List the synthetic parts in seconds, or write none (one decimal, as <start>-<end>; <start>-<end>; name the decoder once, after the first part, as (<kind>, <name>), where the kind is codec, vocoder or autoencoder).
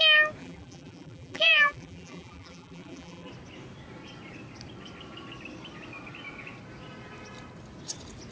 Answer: 0.4-3.3 (vocoder, BigVGAN v2)